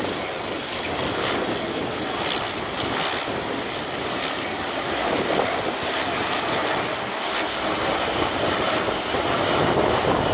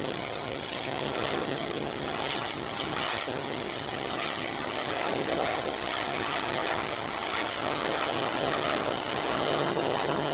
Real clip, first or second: first